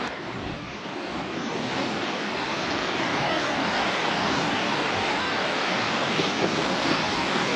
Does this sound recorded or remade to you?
remade